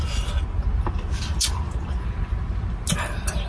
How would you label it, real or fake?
real